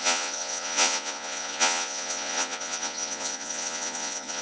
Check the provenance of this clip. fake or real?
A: fake